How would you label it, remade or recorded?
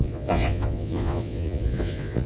remade